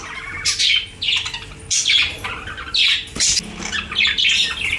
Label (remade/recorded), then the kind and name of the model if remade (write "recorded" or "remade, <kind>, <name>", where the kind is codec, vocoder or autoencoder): recorded